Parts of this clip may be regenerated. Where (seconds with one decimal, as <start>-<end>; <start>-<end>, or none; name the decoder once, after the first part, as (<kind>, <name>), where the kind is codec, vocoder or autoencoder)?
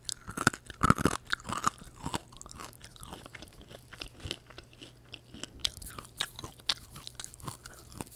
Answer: 2.6-3.5 (vocoder, BigVGAN v2); 5.6-6.3